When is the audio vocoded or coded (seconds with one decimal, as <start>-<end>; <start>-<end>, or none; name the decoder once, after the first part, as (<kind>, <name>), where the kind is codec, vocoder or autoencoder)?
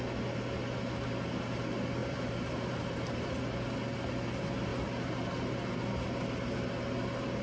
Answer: 2.0-3.4 (vocoder, BigVGAN v2); 4.7-5.3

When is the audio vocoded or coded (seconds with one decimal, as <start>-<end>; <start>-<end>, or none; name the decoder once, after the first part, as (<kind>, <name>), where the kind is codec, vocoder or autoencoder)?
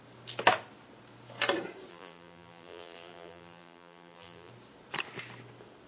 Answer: 1.9-4.5 (vocoder, BigVGAN v2)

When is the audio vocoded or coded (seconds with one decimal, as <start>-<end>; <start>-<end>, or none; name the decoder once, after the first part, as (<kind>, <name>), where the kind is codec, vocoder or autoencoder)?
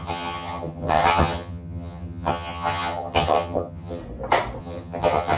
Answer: 0.0-4.0 (vocoder, HiFi-GAN); 4.6-5.4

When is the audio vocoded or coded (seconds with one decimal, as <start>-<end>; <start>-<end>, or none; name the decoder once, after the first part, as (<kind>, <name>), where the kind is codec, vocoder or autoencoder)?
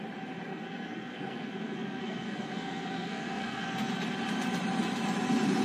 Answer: 0.5-3.9 (codec, SNAC)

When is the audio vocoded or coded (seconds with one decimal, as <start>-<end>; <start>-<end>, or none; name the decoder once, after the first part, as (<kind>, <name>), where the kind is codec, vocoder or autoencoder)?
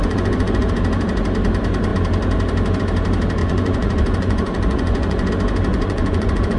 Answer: 0.0-0.7 (vocoder, Vocos); 3.4-5.3; 5.7-6.6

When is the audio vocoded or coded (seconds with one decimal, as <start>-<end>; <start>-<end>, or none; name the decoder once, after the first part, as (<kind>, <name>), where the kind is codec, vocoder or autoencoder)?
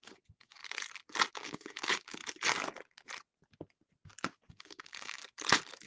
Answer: 0.0-0.6 (codec, DAC); 1.3-2.2; 4.5-5.2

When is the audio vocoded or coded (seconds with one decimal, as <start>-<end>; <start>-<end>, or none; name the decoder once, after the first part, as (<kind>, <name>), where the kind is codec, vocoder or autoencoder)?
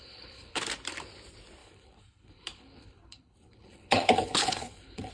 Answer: 0.0-0.6 (codec, HILCodec); 1.6-5.1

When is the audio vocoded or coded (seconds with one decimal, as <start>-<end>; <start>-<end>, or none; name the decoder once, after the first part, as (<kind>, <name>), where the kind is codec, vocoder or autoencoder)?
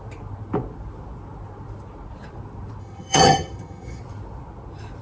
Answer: 2.8-4.0 (vocoder, HiFi-GAN)